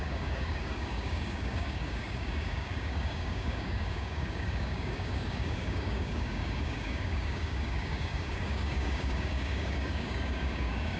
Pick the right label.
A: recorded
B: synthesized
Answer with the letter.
B